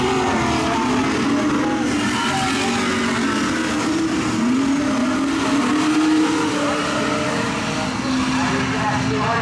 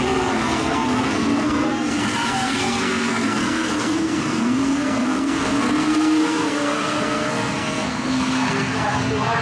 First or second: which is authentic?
first